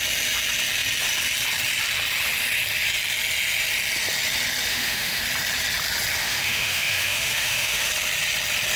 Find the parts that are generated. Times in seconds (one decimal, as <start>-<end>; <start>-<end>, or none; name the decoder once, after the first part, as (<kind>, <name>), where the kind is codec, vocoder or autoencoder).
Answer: 4.7-5.2 (autoencoder, DAC-VAE); 6.2-7.9